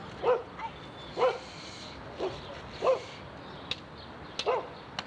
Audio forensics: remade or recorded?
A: recorded